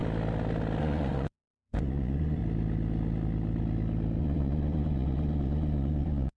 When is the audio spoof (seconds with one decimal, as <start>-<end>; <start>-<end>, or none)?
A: 0.8-2.4; 4.2-6.4